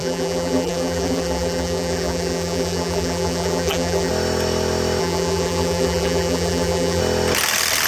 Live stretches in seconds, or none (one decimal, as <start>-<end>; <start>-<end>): 4.1-5.0; 7.0-7.9